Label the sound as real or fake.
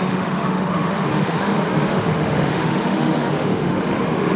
fake